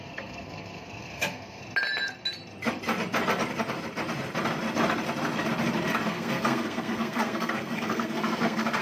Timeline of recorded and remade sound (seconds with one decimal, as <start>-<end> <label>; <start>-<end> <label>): 0.0-1.6 remade; 1.6-6.1 recorded; 6.1-8.8 remade